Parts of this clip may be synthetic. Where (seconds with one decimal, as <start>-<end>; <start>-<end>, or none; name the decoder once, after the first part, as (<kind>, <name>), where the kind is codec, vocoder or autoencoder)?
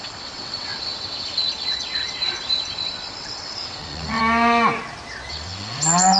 0.0-4.2 (vocoder, WaveNeXt); 5.3-6.2